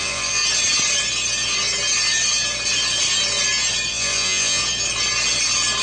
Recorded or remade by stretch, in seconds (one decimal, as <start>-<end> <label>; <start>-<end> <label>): 0.0-0.4 remade; 0.4-3.9 recorded; 3.9-4.6 remade; 4.6-5.8 recorded